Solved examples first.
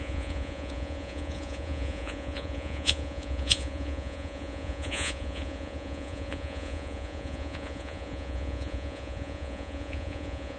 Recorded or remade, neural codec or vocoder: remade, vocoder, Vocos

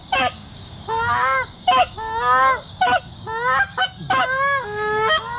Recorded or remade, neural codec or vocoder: remade, codec, DAC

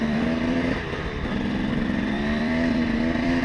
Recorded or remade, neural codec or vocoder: remade, vocoder, BigVGAN v2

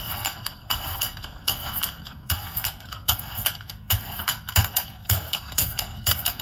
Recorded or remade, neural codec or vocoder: remade, codec, SNAC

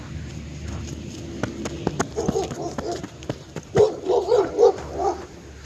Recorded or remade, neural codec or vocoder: recorded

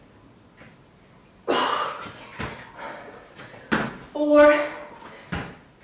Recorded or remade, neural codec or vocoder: recorded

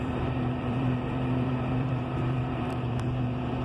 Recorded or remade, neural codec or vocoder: remade, vocoder, BigVGAN v2